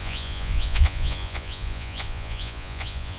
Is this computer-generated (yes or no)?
yes